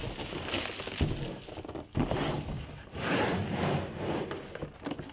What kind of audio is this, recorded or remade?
recorded